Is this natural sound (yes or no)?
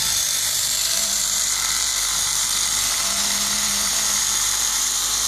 no